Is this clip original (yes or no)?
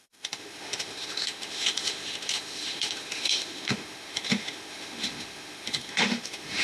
no